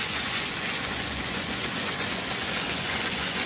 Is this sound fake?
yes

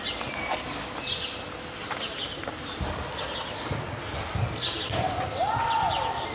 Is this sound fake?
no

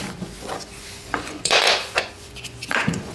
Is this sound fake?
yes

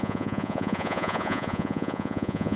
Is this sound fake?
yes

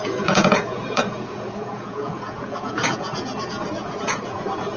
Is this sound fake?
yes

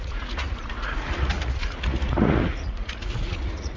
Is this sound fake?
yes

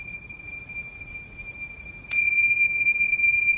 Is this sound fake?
yes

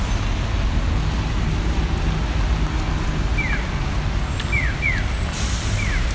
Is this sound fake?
no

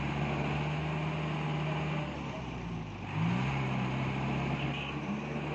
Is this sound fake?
no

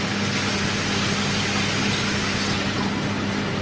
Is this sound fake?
no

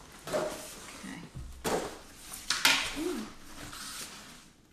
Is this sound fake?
no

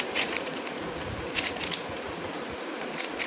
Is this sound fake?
yes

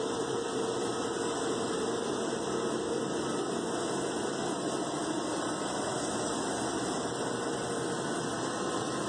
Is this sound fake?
no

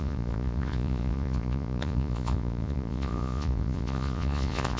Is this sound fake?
yes